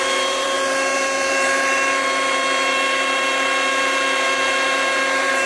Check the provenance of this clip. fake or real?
fake